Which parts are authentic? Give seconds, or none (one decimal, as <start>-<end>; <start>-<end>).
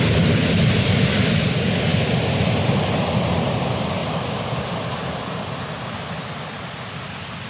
0.0-0.4; 1.1-4.0; 5.6-7.5